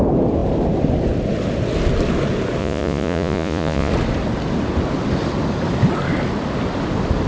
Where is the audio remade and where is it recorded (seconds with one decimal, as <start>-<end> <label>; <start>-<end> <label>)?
0.0-2.6 recorded; 2.6-3.9 remade; 3.9-7.3 recorded